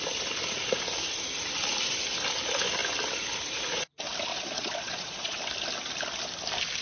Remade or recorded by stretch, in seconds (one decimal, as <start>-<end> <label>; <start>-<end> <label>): 0.0-4.3 recorded; 4.3-5.4 remade; 5.4-6.8 recorded